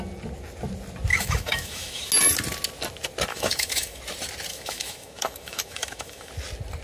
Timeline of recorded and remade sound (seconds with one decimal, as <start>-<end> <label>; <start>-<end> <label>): 0.0-1.1 recorded; 1.1-2.1 remade; 2.1-3.3 recorded; 3.3-4.0 remade; 4.0-4.5 recorded; 4.5-6.3 remade; 6.3-6.8 recorded